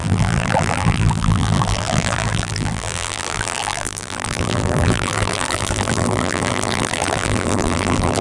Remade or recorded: remade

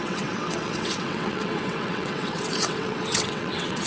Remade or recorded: remade